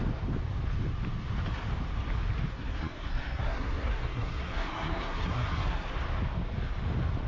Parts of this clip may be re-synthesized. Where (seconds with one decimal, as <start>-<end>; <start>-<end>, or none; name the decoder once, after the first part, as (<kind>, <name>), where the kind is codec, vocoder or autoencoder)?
2.5-5.9 (codec, SNAC)